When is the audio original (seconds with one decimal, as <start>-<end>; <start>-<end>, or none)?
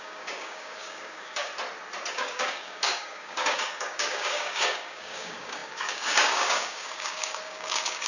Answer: 1.5-2.1